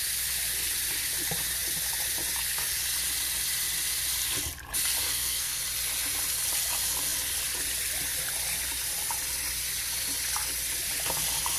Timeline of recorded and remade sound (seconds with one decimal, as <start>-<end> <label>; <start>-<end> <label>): 0.0-5.0 recorded; 5.0-5.6 remade; 5.6-11.6 recorded